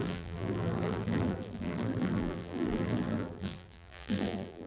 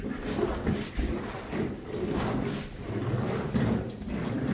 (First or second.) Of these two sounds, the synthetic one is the first